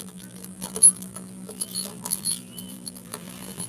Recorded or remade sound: remade